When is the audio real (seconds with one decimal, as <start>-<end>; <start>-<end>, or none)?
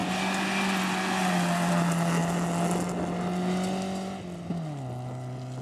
0.0-5.6